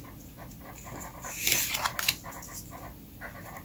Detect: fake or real real